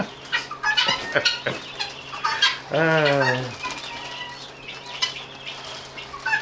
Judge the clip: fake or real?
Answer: real